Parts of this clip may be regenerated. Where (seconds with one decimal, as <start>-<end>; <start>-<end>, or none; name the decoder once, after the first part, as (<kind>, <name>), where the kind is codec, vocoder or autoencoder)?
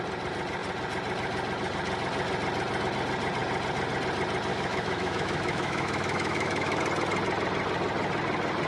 4.5-6.8 (autoencoder, DAC-VAE)